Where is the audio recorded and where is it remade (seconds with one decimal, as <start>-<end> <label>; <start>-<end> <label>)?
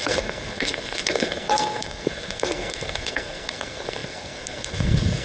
0.0-5.2 remade